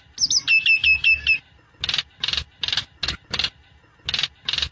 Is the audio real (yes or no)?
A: yes